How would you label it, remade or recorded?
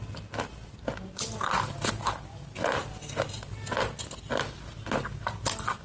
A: recorded